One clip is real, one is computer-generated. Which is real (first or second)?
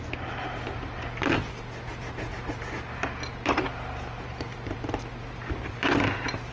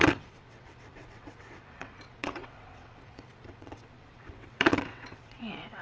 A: first